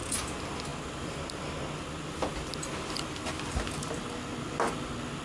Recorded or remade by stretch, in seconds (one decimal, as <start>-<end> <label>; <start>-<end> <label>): 0.0-5.2 recorded

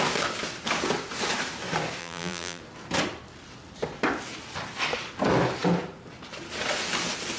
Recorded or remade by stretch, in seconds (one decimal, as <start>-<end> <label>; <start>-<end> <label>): 0.0-2.0 recorded; 2.0-2.6 remade; 2.6-7.4 recorded